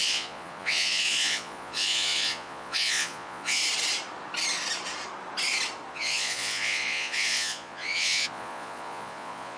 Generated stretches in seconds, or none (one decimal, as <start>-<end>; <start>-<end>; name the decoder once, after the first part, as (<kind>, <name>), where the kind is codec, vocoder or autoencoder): 0.0-3.6 (vocoder, Vocos); 5.9-9.6